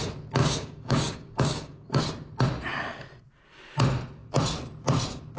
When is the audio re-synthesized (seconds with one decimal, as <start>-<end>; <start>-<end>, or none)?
0.4-2.0